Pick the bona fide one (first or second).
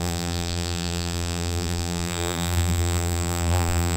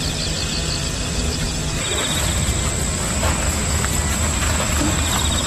second